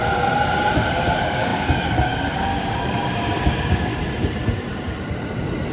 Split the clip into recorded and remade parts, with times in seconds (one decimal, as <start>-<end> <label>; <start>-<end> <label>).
0.0-0.7 recorded; 0.7-3.9 remade; 3.9-5.7 recorded